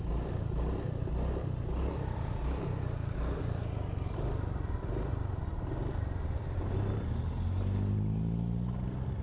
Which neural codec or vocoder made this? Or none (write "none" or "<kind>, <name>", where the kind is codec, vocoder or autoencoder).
none